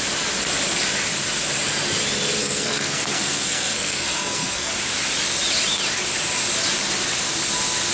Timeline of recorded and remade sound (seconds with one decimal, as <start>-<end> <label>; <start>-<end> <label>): 0.0-2.4 recorded; 2.4-4.7 remade; 4.7-7.9 recorded